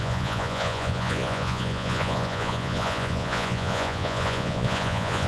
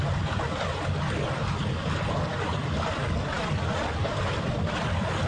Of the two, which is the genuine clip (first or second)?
second